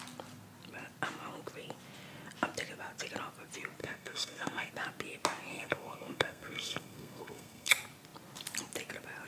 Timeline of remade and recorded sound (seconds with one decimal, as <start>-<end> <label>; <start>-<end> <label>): 0.0-3.8 recorded; 3.8-4.7 remade; 4.7-5.5 recorded; 5.5-7.7 remade; 7.7-9.3 recorded